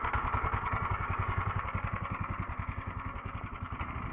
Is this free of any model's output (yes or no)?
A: no